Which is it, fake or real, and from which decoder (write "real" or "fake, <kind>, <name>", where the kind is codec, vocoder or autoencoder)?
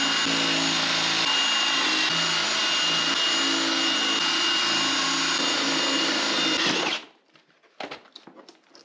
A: real